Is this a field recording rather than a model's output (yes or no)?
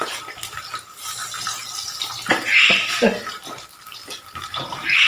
yes